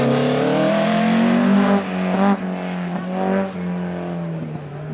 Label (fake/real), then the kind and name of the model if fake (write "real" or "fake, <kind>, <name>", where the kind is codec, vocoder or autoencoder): real